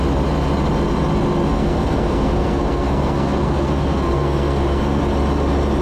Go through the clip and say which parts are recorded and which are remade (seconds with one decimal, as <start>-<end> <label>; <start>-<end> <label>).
0.0-1.5 recorded; 1.5-5.0 remade; 5.0-5.8 recorded